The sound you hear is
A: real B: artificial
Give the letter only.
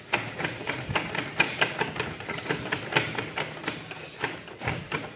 B